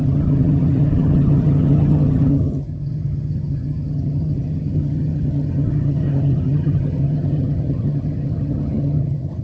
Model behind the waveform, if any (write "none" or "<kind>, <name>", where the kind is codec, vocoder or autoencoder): vocoder, HiFi-GAN